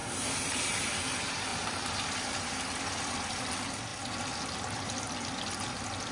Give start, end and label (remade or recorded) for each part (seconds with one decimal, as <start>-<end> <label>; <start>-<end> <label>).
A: 0.0-0.9 remade; 0.9-1.5 recorded; 1.5-3.5 remade; 3.5-6.1 recorded

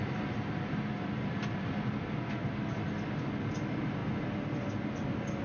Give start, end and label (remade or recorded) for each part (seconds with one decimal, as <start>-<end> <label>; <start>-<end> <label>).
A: 0.0-5.4 recorded